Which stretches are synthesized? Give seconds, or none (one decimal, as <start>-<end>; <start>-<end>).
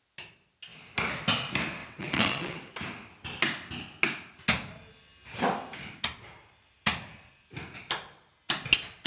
1.8-2.7